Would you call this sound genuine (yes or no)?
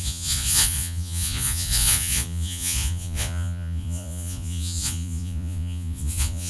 no